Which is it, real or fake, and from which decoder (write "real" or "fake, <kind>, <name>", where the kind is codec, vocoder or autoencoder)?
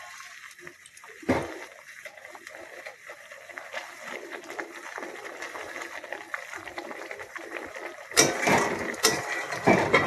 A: fake, vocoder, BigVGAN v2